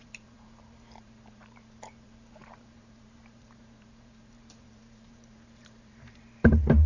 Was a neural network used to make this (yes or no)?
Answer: yes